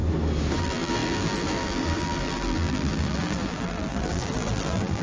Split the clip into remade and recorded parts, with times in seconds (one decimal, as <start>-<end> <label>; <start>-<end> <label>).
0.0-0.6 recorded; 0.6-5.0 remade